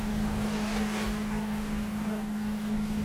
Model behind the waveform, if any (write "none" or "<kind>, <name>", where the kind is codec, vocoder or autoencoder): codec, DAC